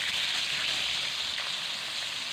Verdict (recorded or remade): recorded